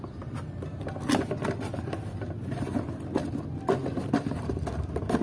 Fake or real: real